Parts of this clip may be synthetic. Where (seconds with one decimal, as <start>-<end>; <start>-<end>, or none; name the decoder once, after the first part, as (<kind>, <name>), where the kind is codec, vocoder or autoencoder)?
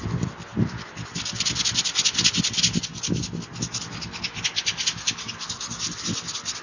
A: none